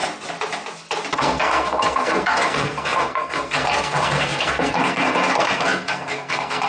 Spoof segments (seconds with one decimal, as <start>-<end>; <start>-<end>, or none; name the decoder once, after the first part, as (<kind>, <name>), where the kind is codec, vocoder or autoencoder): 1.1-6.7 (codec, SNAC)